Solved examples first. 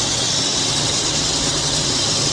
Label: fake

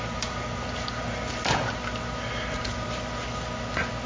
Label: real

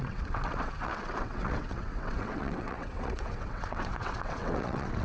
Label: fake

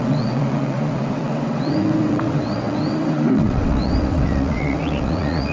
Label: fake